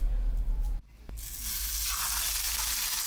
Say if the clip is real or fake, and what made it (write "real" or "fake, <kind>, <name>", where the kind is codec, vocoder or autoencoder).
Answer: real